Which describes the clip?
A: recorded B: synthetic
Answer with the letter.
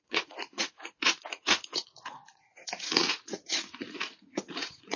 B